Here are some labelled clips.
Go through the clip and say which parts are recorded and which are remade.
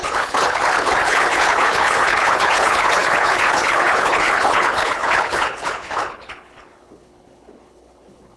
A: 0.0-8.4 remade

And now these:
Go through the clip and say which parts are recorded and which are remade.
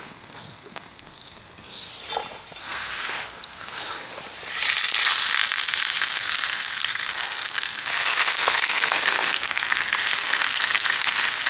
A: 0.0-1.9 remade; 1.9-2.6 recorded; 2.6-4.1 remade; 4.1-6.0 recorded; 6.0-11.5 remade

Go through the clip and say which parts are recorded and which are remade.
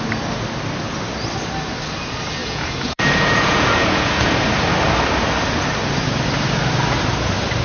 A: 0.0-2.4 recorded; 2.4-4.3 remade; 4.3-7.6 recorded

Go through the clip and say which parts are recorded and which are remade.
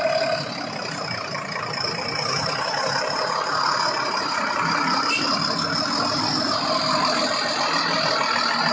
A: 0.0-2.3 recorded; 2.3-5.4 remade; 5.4-8.7 recorded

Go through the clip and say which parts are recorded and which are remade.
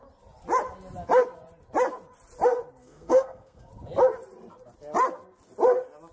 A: 0.0-2.8 recorded; 2.8-3.7 remade; 3.7-6.1 recorded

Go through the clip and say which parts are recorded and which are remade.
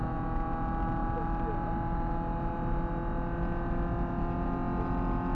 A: 0.0-5.3 recorded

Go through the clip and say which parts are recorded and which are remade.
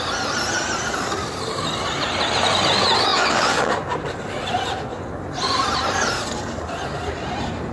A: 0.0-3.1 recorded; 3.1-3.7 remade; 3.7-7.7 recorded